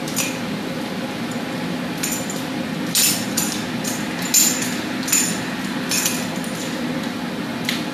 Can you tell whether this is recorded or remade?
recorded